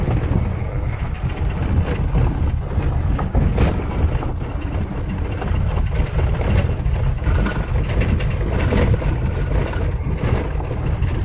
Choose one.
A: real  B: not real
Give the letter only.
A